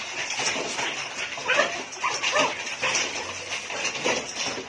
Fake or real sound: real